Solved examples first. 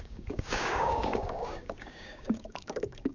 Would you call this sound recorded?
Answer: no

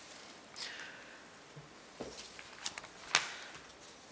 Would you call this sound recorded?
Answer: yes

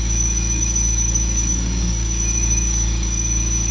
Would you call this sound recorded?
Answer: no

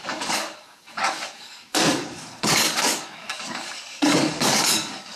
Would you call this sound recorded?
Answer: no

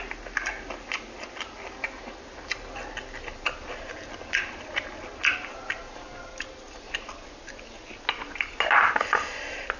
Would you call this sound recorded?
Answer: yes